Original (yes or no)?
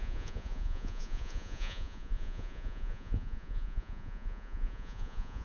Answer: no